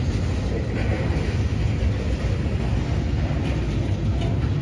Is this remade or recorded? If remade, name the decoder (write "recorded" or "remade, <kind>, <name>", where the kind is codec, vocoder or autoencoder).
recorded